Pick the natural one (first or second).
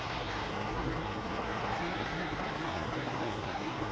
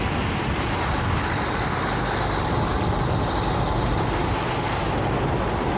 second